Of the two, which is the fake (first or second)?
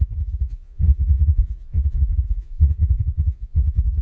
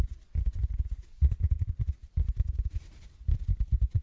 first